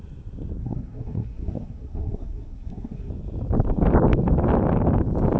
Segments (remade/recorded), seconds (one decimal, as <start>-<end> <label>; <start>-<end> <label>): 0.0-0.6 recorded; 0.6-3.1 remade; 3.1-5.4 recorded